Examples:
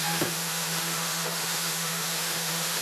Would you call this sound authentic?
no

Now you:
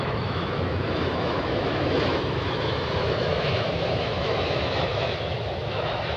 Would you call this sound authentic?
no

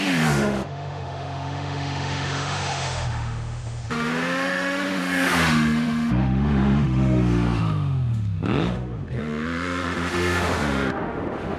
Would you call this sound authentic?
no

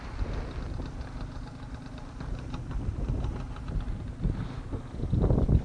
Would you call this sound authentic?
yes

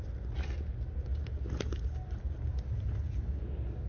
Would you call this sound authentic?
yes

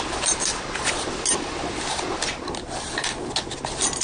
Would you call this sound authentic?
yes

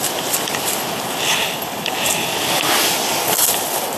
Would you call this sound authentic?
yes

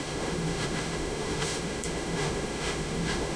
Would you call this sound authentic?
no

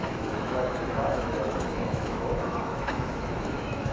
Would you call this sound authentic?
no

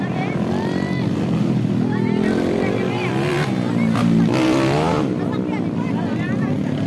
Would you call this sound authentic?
yes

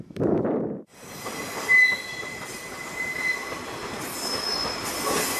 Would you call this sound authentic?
yes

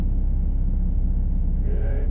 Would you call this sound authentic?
no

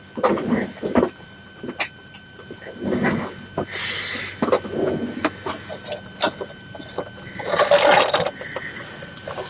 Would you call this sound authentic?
yes